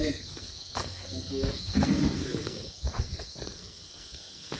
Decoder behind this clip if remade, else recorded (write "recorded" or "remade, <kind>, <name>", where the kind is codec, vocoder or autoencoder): remade, codec, SNAC